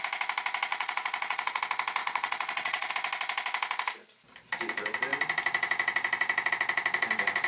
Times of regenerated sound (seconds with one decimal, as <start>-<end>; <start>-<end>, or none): 0.7-1.6; 2.0-2.9

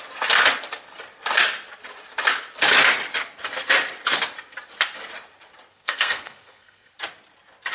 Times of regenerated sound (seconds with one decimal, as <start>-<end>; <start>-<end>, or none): 5.7-6.9

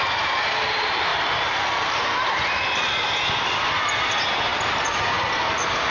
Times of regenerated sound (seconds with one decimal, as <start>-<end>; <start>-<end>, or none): none

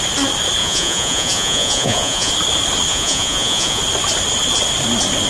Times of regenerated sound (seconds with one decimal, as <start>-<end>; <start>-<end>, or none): 0.6-2.3; 2.9-3.8

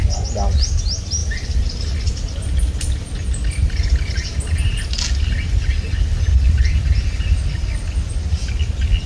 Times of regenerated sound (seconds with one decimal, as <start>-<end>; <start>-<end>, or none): 1.2-1.7

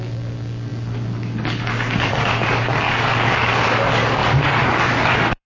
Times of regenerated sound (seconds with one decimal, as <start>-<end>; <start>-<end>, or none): 0.0-5.5